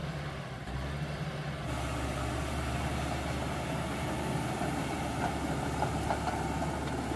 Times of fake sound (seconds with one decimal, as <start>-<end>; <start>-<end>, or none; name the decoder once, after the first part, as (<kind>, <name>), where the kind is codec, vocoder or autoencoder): none